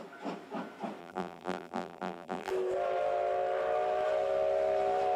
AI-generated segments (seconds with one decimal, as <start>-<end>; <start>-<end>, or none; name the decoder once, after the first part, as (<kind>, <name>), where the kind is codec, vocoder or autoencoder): 1.0-2.5 (vocoder, BigVGAN v2)